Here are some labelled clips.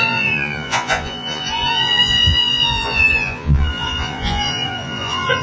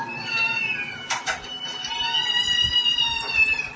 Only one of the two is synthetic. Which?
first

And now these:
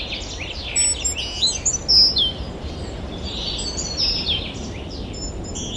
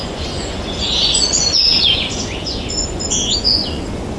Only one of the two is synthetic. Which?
second